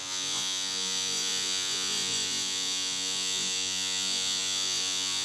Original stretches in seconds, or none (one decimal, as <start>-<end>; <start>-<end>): none